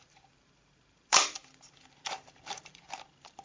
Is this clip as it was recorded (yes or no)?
no